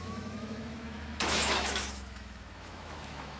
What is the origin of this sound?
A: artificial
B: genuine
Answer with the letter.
A